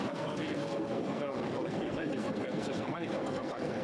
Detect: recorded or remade remade